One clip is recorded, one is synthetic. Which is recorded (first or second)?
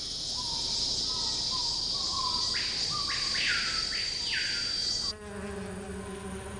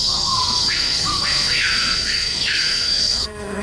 first